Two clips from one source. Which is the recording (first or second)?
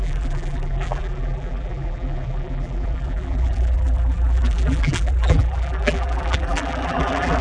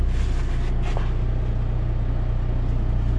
second